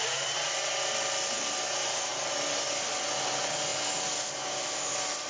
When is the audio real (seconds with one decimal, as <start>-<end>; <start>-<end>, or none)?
0.0-5.3